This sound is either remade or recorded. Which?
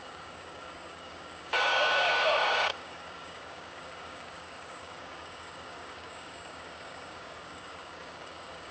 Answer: remade